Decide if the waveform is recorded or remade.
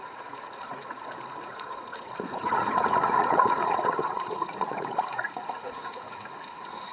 remade